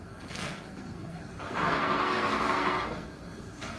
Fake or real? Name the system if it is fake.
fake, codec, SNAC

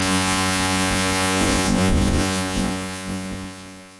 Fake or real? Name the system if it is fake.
fake, vocoder, Vocos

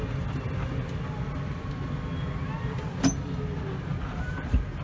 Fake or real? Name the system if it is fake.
real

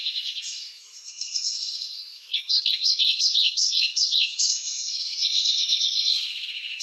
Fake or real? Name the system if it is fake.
fake, codec, SNAC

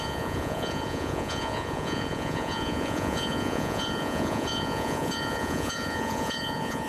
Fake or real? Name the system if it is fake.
fake, vocoder, Vocos